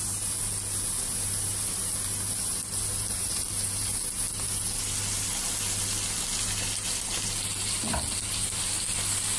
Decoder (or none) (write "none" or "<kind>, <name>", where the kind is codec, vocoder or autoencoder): none